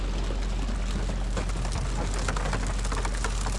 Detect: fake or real real